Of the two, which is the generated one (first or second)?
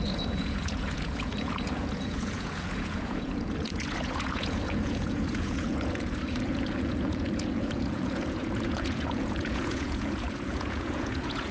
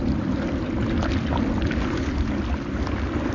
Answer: first